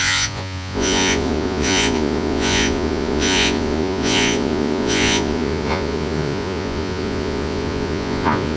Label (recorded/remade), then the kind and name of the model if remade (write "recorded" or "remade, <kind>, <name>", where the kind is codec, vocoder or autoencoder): remade, vocoder, Vocos